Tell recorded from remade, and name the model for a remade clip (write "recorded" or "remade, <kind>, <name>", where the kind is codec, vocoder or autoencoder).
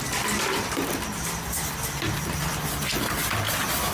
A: recorded